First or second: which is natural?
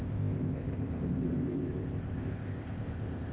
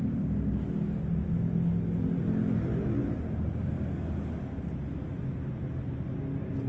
second